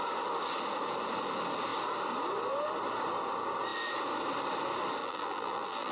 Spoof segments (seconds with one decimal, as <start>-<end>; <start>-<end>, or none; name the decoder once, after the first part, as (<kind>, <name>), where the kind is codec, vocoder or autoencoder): 5.0-5.9 (vocoder, BigVGAN v2)